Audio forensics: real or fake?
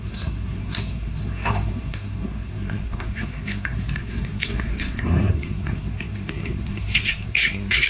fake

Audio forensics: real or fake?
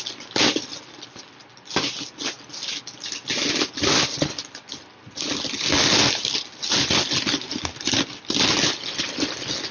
real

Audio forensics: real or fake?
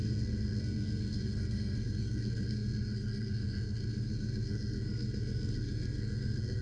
fake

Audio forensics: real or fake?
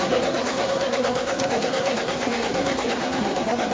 fake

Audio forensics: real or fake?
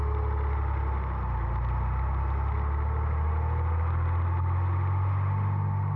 real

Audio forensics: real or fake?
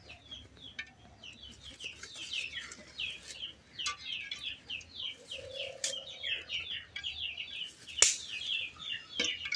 real